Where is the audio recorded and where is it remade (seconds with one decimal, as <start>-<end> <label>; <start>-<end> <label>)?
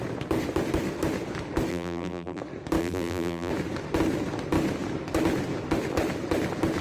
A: 0.0-1.7 recorded; 1.7-2.4 remade; 2.4-2.8 recorded; 2.8-3.5 remade; 3.5-6.8 recorded